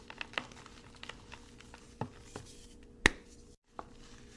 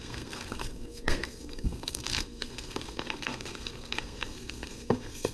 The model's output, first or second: second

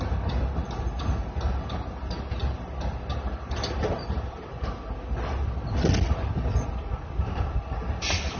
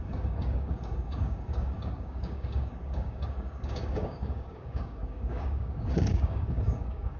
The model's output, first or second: second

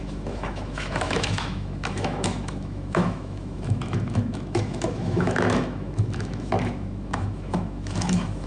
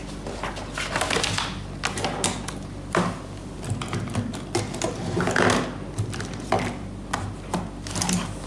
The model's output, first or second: first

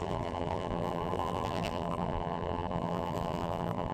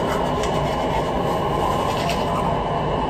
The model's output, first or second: first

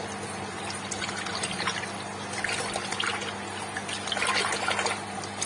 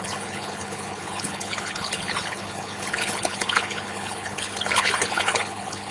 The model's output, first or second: second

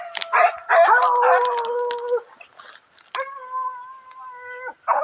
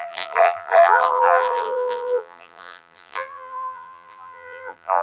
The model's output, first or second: second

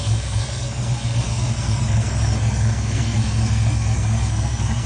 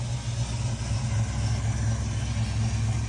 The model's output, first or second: first